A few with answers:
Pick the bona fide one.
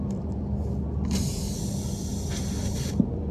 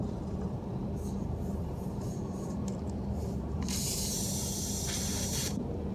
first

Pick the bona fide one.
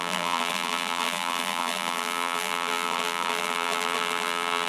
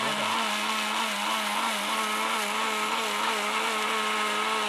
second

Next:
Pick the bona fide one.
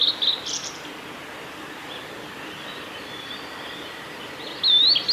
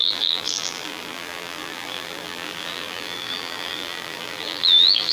first